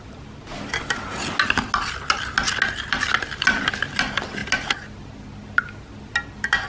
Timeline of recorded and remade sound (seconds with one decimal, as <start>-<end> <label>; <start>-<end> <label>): 0.0-6.7 recorded